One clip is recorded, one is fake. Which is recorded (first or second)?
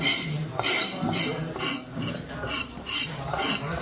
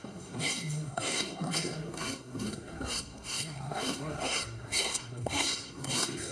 first